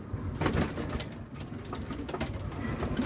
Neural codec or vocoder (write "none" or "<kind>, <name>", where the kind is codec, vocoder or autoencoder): none